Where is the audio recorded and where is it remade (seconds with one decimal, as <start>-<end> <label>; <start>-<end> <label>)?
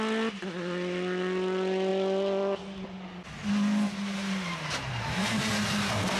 0.0-6.2 recorded